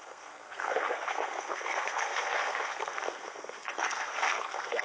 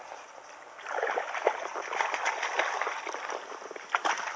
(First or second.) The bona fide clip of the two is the second